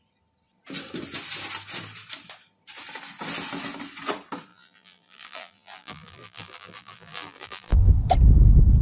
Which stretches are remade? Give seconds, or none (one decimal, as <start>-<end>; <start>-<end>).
4.5-7.9